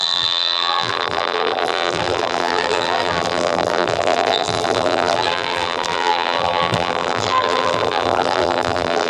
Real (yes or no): no